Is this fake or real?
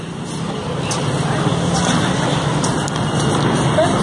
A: real